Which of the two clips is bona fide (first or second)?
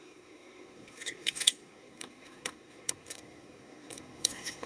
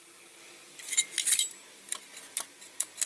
second